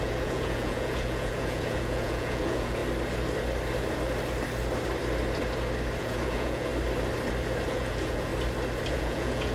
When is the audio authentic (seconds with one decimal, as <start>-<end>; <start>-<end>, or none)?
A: 2.8-6.0; 6.7-7.7; 8.3-8.9